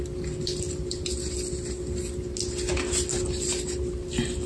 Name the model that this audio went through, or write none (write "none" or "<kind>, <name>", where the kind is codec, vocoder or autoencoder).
none